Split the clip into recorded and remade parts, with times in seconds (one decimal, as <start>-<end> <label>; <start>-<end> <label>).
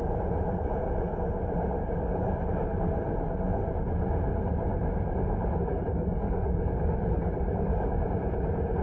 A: 0.0-1.8 recorded; 1.8-2.4 remade; 2.4-5.7 recorded; 5.7-7.9 remade; 7.9-8.8 recorded